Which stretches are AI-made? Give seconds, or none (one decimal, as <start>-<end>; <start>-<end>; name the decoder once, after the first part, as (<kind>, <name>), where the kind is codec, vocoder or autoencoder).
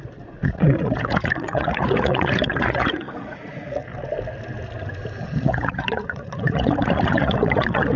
0.0-3.9 (vocoder, Vocos); 5.4-8.0